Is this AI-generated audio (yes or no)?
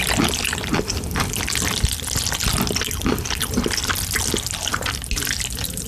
no